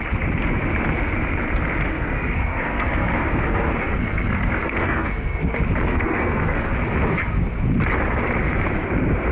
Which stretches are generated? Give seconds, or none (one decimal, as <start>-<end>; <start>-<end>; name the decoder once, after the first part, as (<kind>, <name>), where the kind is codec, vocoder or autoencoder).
1.9-5.4 (codec, SNAC); 5.9-6.7